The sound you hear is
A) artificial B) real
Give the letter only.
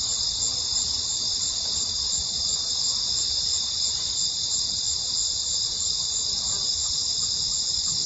B